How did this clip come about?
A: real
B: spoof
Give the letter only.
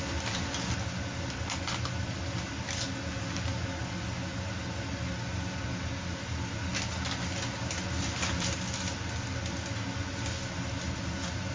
A